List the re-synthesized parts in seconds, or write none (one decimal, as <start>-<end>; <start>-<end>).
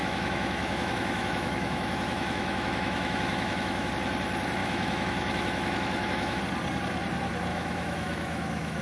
0.0-3.9; 4.6-6.4; 7.5-8.8